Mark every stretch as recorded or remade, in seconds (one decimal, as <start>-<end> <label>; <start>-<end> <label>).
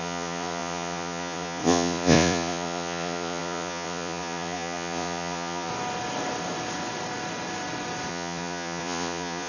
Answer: 0.0-5.7 remade; 5.7-8.1 recorded; 8.1-9.5 remade